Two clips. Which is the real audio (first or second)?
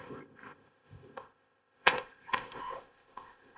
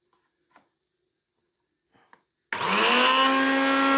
second